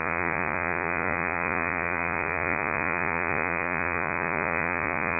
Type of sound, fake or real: fake